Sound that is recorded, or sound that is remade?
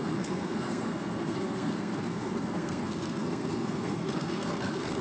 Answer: remade